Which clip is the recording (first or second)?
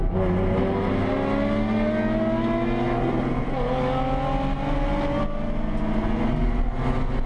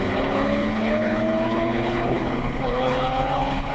first